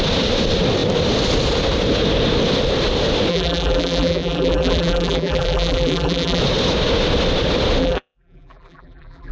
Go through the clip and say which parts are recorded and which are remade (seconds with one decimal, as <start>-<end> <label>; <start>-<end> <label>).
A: 0.0-3.3 recorded; 3.3-6.4 remade; 6.4-7.8 recorded; 7.8-9.3 remade